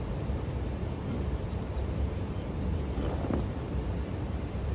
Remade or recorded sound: remade